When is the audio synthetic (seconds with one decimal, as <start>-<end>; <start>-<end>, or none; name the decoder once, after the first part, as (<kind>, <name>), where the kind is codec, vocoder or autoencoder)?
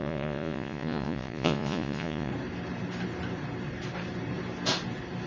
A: 0.0-2.3 (vocoder, Vocos)